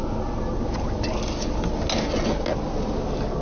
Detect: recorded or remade recorded